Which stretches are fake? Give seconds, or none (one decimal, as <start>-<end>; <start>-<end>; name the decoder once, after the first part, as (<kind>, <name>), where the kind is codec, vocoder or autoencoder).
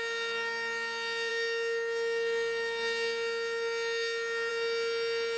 none